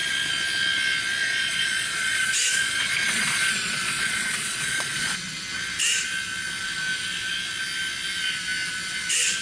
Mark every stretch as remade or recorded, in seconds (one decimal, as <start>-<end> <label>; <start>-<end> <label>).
0.0-1.2 recorded; 1.2-5.2 remade; 5.2-9.4 recorded